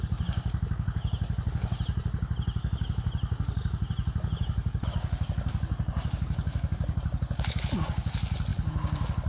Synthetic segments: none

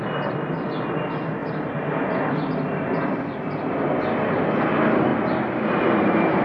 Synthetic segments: 0.0-5.1 (vocoder, BigVGAN v2); 5.8-6.4

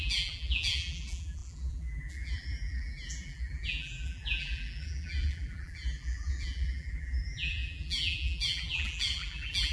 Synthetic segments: 0.0-9.7 (vocoder, BigVGAN v2)

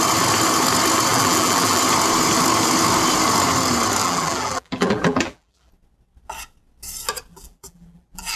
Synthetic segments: 1.1-1.8 (vocoder, BigVGAN v2); 4.0-5.7; 7.3-8.4